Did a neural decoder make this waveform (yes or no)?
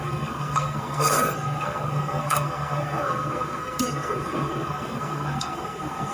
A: yes